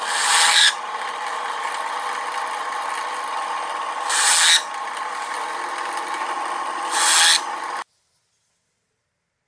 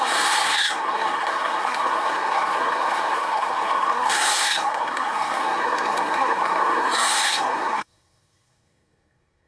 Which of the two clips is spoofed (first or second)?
second